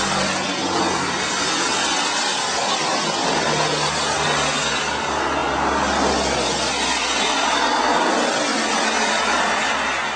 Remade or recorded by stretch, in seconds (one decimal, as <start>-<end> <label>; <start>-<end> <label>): 0.0-10.2 recorded